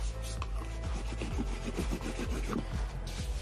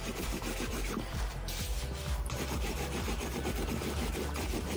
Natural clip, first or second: first